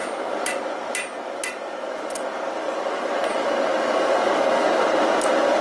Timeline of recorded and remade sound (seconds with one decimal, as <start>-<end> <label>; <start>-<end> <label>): 0.0-5.6 recorded